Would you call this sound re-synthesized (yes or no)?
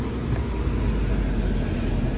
no